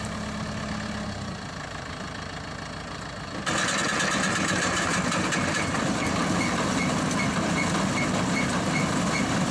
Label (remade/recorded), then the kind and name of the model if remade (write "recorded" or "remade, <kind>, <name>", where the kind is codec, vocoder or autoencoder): recorded